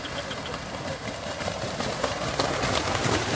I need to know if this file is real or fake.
real